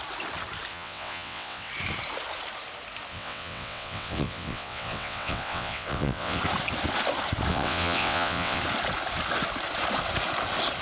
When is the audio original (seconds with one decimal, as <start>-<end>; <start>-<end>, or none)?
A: 0.0-0.7; 1.7-3.1; 6.4-7.5; 8.6-10.8